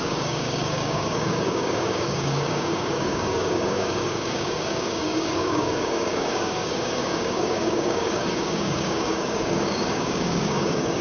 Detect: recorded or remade remade